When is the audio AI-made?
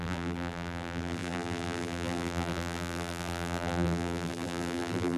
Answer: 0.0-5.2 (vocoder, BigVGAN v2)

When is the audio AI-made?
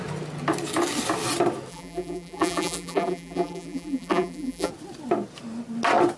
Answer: 1.7-4.7 (vocoder, BigVGAN v2)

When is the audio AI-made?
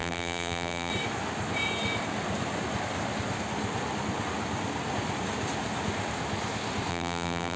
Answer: 0.0-0.9 (vocoder, BigVGAN v2); 6.9-7.6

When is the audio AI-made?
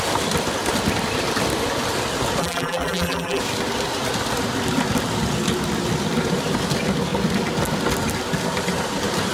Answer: 2.4-3.4 (vocoder, BigVGAN v2)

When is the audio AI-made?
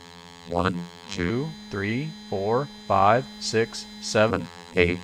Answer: 0.0-1.3 (vocoder, BigVGAN v2); 4.3-5.0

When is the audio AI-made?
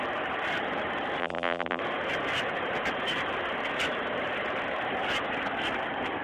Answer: 1.2-1.8 (vocoder, BigVGAN v2)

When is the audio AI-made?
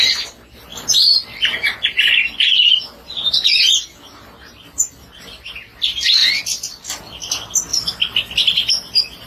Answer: 0.0-4.5 (vocoder, BigVGAN v2); 6.2-7.0; 7.7-8.7